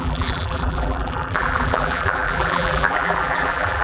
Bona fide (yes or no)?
no